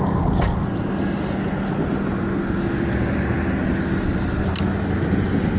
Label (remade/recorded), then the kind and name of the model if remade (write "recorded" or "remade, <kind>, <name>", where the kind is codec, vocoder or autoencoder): recorded